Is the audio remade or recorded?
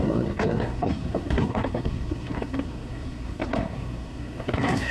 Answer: remade